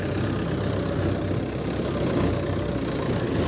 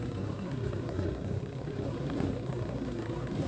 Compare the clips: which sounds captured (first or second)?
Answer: first